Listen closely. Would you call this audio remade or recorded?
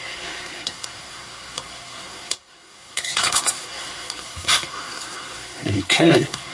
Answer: remade